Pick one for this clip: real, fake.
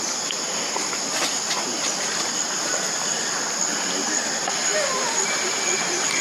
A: real